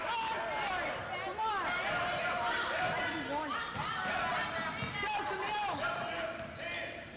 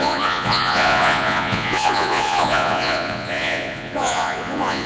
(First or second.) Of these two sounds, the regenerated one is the second